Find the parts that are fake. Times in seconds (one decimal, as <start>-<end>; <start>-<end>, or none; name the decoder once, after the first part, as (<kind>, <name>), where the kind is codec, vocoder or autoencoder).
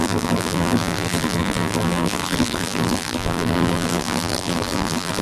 0.0-5.2 (vocoder, BigVGAN v2)